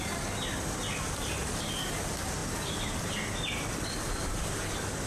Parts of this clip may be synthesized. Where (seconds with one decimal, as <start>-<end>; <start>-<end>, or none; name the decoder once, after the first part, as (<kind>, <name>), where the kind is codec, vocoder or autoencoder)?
none